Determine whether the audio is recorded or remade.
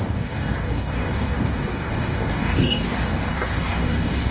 remade